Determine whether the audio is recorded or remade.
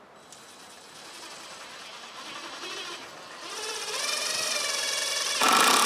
recorded